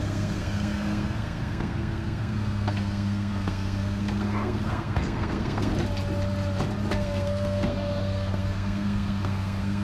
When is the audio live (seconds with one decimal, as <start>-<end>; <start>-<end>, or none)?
5.7-6.9